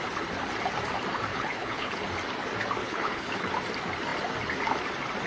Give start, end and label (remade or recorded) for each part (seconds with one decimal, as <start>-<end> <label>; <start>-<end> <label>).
0.0-1.3 recorded; 1.3-2.0 remade; 2.0-2.8 recorded; 2.8-3.5 remade; 3.5-5.3 recorded